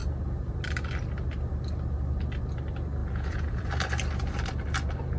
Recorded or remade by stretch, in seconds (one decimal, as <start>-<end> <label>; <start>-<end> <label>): 0.0-3.0 recorded; 3.0-3.6 remade; 3.6-5.2 recorded